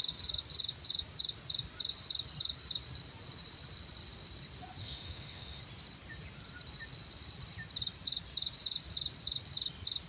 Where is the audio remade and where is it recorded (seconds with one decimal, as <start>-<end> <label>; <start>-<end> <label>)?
0.0-4.8 recorded; 4.8-5.6 remade; 5.6-10.1 recorded

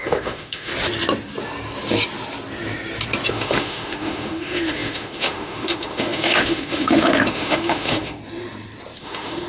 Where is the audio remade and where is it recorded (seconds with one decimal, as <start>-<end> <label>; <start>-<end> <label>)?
0.0-0.7 remade; 0.7-3.3 recorded; 3.3-8.2 remade; 8.2-9.0 recorded; 9.0-9.5 remade

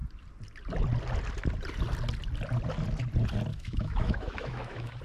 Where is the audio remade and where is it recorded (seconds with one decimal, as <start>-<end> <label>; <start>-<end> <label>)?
0.0-3.5 recorded; 3.5-5.0 remade

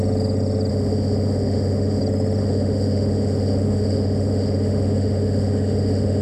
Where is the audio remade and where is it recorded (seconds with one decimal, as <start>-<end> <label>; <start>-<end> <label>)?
0.0-0.7 recorded; 0.7-2.0 remade; 2.0-2.4 recorded; 2.4-6.2 remade